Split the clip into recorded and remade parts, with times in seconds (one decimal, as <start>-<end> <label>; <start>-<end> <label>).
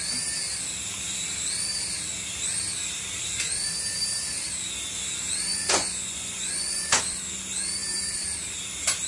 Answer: 0.0-5.5 recorded; 5.5-7.0 remade; 7.0-9.1 recorded